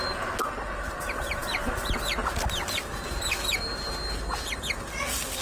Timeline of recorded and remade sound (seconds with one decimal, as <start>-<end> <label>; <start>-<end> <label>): 0.0-5.4 recorded